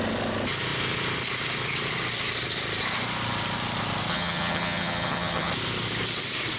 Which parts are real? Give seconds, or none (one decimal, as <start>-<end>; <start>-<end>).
0.0-4.1; 5.5-6.6